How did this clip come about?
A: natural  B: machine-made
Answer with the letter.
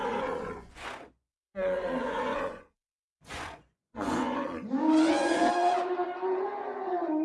B